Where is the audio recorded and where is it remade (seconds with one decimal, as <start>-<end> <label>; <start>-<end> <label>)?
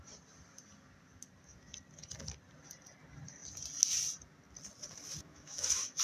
0.0-5.2 recorded; 5.2-6.0 remade